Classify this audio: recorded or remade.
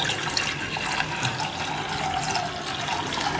recorded